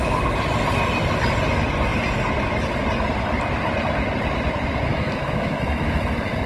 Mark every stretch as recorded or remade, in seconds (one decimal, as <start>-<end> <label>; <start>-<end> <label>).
0.0-4.9 recorded; 4.9-6.1 remade; 6.1-6.5 recorded